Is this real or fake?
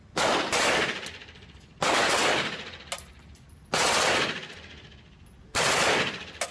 real